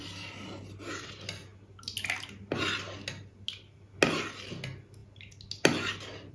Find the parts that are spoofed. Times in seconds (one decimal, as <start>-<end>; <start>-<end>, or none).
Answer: none